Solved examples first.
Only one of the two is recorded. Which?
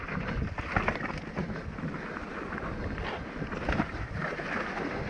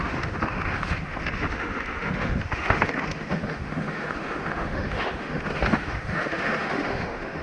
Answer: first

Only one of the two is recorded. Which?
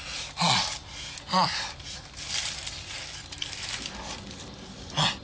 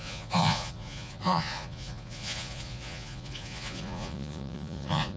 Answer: first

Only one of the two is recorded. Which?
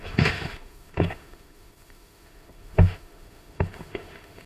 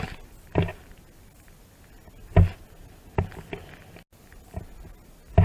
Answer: second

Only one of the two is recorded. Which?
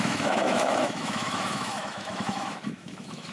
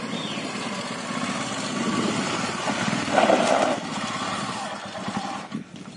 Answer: second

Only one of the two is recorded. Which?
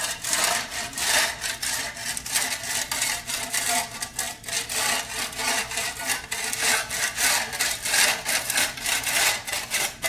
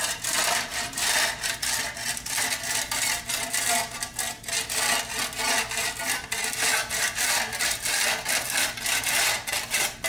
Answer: second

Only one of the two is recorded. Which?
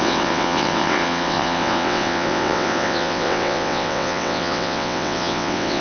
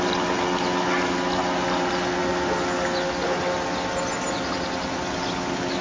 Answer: second